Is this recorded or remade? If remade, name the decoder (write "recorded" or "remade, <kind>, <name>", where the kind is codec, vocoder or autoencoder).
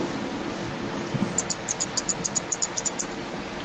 recorded